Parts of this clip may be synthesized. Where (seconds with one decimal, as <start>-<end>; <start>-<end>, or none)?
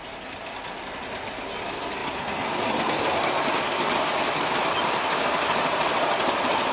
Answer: none